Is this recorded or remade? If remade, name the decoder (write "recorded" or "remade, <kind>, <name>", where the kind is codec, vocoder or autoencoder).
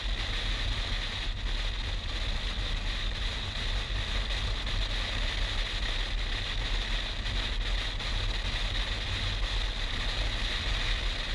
recorded